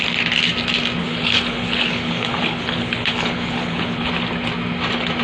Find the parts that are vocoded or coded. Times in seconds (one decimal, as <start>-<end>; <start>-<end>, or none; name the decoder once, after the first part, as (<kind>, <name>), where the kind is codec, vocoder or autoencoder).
1.0-4.1 (codec, HILCodec)